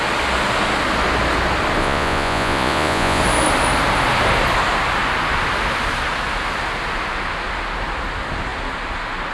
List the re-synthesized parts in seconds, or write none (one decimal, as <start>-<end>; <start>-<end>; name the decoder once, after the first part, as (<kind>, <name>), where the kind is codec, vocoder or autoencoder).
1.8-3.2 (vocoder, Vocos)